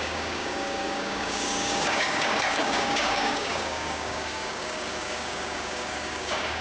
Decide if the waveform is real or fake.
fake